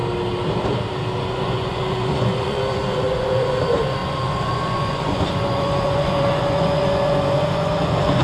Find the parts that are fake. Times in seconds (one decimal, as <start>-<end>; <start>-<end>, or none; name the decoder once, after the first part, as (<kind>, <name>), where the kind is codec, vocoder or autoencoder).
1.2-8.2 (vocoder, Vocos)